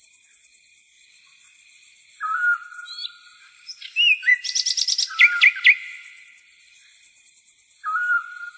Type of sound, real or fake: fake